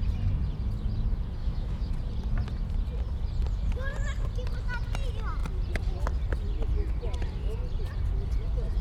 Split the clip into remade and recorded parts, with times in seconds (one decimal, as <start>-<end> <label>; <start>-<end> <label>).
0.0-1.4 recorded; 1.4-1.9 remade; 1.9-8.8 recorded